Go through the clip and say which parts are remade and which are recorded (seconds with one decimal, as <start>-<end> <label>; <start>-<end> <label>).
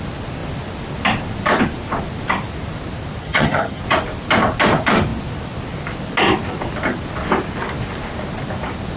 0.0-3.2 recorded; 3.2-3.8 remade; 3.8-9.0 recorded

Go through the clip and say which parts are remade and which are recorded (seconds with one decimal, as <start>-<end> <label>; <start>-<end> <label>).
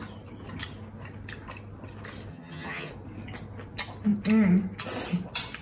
0.0-2.3 recorded; 2.3-2.9 remade; 2.9-5.6 recorded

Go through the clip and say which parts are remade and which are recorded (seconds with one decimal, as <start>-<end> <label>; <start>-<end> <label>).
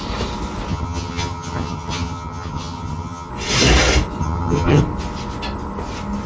0.0-0.7 recorded; 0.7-3.3 remade; 3.3-4.2 recorded; 4.2-4.8 remade; 4.8-6.3 recorded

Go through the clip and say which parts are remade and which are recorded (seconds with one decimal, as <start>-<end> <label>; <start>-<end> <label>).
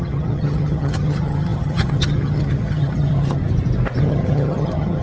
0.0-3.4 remade; 3.4-4.0 recorded; 4.0-5.0 remade